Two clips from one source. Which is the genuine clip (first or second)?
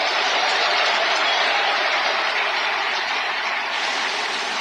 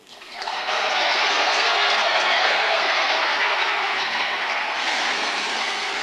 first